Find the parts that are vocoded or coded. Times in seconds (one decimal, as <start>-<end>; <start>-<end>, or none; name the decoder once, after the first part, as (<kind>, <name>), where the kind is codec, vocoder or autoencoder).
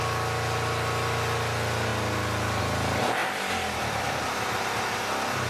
none